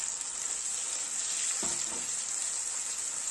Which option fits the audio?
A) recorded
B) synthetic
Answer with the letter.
A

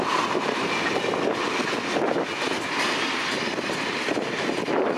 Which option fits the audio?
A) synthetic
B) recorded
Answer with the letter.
B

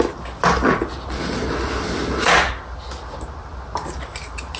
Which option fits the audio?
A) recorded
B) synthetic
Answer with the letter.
A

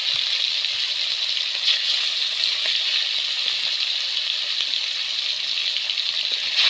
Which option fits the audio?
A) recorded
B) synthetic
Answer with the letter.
A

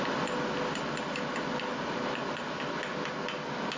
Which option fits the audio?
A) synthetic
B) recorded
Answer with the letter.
B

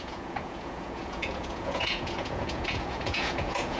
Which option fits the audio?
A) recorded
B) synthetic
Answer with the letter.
B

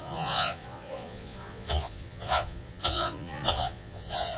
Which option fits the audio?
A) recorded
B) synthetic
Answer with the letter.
B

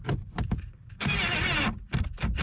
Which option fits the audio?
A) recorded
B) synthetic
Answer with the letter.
A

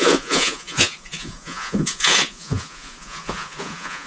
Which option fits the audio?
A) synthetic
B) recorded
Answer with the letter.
A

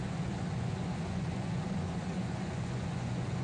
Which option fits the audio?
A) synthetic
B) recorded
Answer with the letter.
A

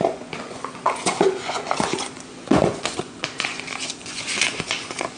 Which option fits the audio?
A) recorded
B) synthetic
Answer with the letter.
B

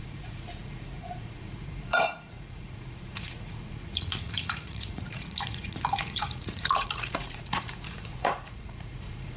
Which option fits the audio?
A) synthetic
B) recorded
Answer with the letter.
A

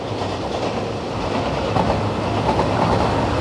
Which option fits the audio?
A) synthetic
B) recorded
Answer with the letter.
B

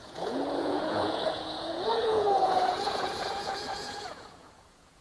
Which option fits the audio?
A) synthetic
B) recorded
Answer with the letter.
A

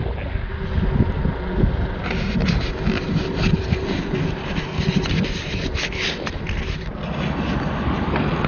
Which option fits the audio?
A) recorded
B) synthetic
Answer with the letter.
A